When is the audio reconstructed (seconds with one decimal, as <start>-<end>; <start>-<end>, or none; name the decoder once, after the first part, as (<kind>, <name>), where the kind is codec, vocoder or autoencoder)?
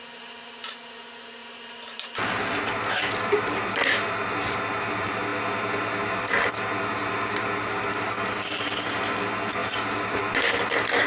1.4-2.3 (vocoder, BigVGAN v2)